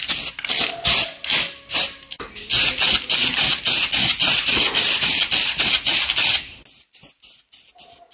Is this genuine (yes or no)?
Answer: yes